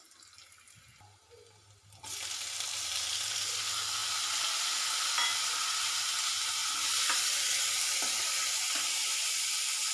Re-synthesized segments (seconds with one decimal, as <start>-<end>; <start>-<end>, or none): none